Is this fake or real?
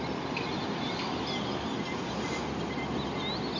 real